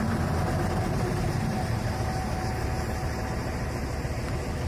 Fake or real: fake